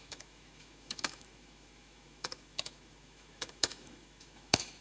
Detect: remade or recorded remade